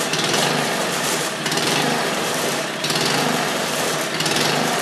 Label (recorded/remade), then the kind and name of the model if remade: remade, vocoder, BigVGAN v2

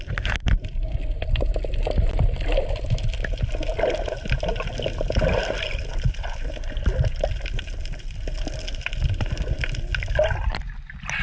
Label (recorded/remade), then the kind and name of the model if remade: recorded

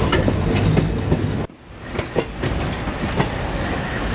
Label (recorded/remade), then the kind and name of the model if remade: recorded